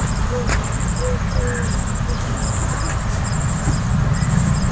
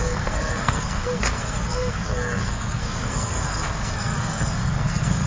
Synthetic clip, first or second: second